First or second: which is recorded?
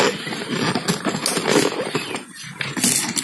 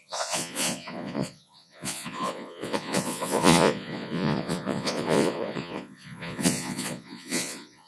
first